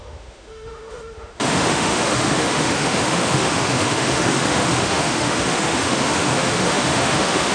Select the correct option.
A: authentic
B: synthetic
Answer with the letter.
B